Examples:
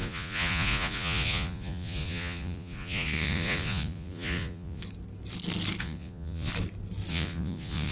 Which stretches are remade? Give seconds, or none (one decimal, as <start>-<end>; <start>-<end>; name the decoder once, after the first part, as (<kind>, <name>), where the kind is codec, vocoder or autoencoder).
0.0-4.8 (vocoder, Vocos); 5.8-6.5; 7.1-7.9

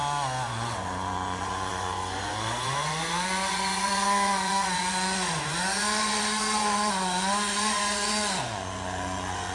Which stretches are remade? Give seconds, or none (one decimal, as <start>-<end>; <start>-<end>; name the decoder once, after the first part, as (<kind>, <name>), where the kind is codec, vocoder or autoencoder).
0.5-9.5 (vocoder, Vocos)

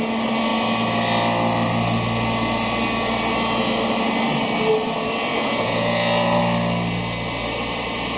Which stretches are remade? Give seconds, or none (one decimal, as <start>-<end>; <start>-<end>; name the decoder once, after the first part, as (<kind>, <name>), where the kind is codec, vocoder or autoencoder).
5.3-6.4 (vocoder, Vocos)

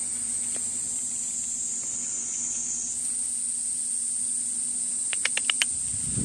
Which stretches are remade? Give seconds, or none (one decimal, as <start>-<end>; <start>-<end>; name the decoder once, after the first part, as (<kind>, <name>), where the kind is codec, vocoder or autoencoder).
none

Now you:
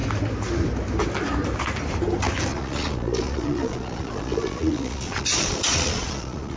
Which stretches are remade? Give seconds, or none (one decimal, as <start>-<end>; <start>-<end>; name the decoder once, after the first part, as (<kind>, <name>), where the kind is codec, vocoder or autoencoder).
2.5-6.6 (vocoder, Vocos)

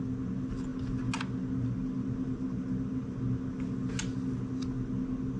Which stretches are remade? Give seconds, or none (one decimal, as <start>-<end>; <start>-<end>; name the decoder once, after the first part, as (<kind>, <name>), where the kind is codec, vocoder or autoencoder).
none